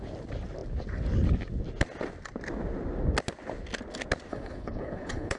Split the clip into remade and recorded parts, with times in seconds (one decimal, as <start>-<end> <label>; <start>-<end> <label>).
0.0-4.3 recorded; 4.3-5.4 remade